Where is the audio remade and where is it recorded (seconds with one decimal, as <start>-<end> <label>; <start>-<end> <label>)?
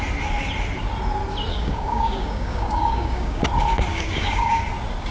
0.0-1.5 recorded; 1.5-3.4 remade; 3.4-3.9 recorded; 3.9-4.6 remade; 4.6-5.1 recorded